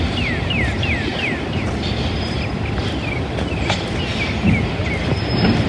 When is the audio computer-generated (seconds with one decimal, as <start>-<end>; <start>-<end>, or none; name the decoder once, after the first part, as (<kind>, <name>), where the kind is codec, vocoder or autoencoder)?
none